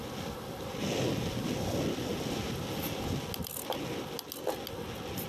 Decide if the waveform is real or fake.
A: real